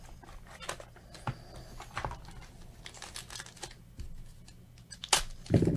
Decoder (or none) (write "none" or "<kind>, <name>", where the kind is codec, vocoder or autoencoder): none